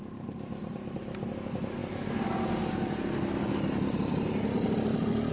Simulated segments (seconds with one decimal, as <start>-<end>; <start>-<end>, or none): none